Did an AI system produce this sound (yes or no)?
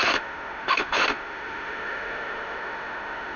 yes